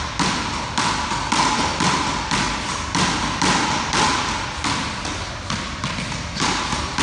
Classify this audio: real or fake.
real